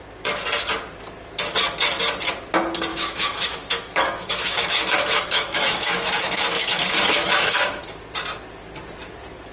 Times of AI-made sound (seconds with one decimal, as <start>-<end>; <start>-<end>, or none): 2.9-7.8